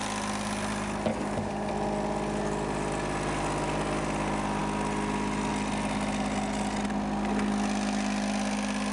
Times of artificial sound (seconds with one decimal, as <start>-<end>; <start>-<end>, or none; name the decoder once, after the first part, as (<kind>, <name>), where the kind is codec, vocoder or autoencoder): 1.1-1.7 (codec, DAC)